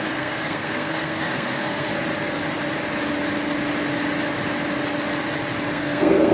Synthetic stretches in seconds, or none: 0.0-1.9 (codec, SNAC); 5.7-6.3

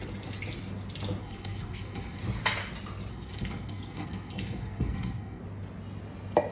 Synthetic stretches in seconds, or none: 1.2-2.2 (codec, SNAC); 3.1-5.4

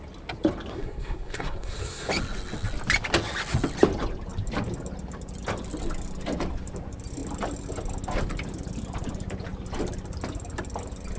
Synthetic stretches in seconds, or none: 0.7-2.1 (codec, SNAC)

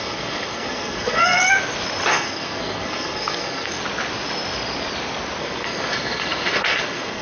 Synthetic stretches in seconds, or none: 0.0-1.4 (codec, SNAC); 2.1-3.8; 5.4-7.2